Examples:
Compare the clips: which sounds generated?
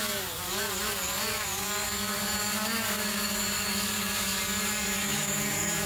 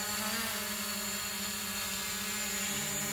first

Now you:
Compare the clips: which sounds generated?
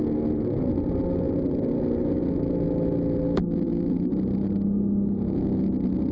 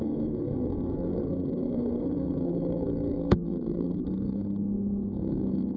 second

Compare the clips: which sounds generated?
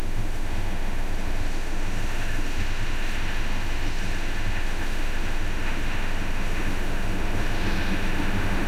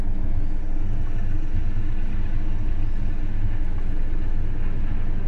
first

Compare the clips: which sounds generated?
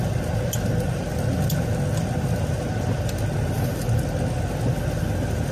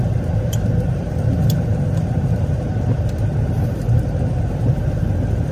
second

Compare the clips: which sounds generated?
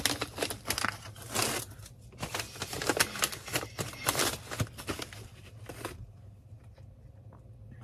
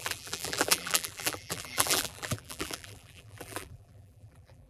second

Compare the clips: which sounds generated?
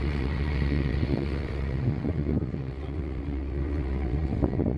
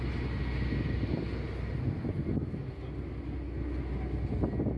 first